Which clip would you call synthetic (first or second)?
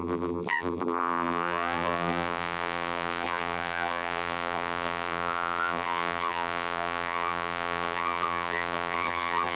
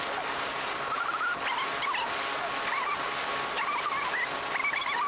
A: first